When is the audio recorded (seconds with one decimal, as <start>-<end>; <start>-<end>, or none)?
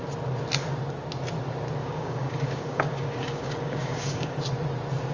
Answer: 0.0-1.8; 4.4-5.1